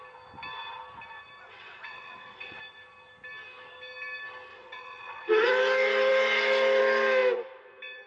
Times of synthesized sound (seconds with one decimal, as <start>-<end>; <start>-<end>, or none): 1.4-2.6; 4.5-5.5